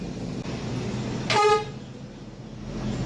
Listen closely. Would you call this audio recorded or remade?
recorded